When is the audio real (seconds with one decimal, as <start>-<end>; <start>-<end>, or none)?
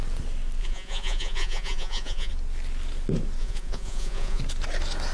0.0-0.6; 2.3-3.4; 4.4-5.1